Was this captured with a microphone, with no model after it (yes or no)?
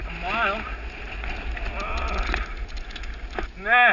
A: yes